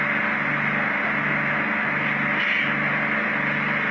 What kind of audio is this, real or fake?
real